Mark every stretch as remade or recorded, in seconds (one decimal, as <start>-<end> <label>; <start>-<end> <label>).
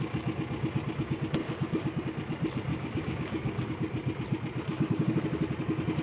0.0-1.4 recorded; 1.4-2.0 remade; 2.0-2.7 recorded; 2.7-3.7 remade; 3.7-4.7 recorded; 4.7-5.2 remade; 5.2-6.0 recorded